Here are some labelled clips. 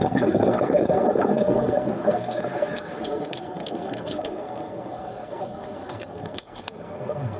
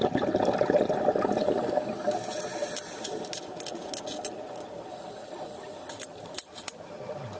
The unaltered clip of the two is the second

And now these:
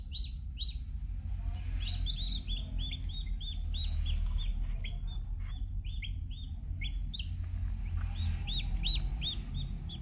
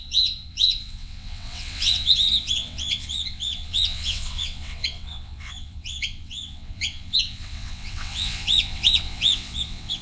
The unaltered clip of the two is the first